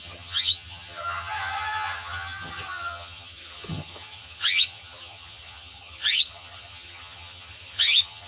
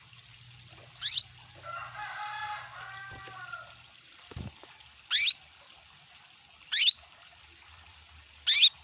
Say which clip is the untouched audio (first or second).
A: second